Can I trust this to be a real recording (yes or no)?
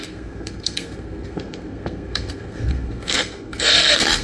no